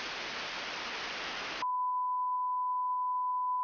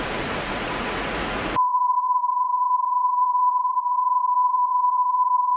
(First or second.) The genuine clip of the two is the first